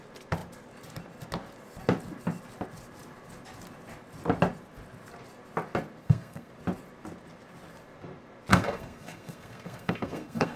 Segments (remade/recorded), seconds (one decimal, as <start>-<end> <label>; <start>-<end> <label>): 0.0-6.0 recorded; 6.0-6.5 remade; 6.5-8.5 recorded; 8.5-10.6 remade